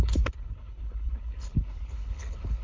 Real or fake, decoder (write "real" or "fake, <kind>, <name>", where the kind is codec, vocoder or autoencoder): fake, codec, HILCodec